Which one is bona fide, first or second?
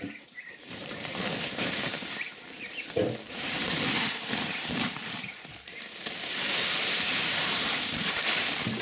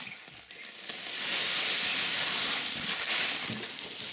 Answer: second